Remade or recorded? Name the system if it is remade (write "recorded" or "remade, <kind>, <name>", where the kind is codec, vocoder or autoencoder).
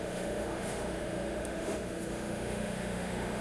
remade, autoencoder, DAC-VAE